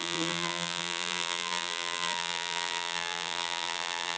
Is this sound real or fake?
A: fake